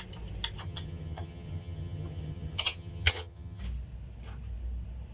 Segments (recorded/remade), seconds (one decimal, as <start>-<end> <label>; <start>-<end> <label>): 0.0-0.6 recorded; 0.6-3.6 remade; 3.6-5.1 recorded